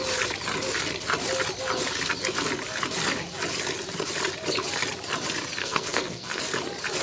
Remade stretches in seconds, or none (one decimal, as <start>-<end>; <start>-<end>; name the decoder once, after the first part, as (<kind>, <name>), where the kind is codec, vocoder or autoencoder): 5.6-6.4 (codec, SNAC)